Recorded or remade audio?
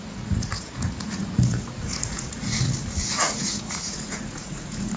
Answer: remade